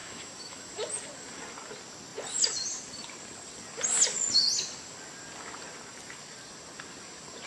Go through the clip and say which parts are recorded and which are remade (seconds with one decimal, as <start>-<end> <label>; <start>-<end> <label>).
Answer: 0.0-0.7 remade; 0.7-7.5 recorded